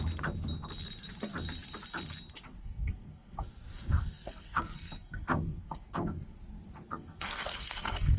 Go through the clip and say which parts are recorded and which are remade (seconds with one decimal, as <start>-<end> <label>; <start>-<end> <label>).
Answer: 0.0-2.6 recorded; 2.6-6.4 remade; 6.4-6.9 recorded; 6.9-8.2 remade